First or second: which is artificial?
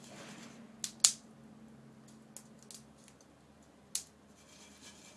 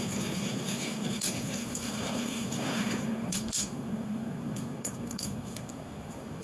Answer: second